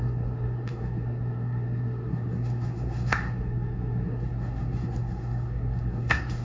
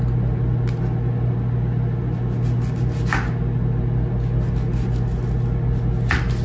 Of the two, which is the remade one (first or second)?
first